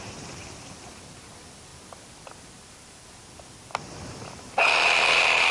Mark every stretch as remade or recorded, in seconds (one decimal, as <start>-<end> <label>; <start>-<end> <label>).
0.0-5.5 recorded